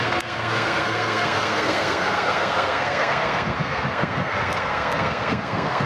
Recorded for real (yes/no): no